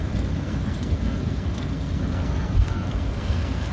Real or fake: fake